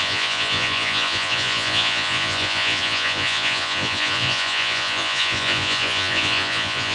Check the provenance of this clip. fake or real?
fake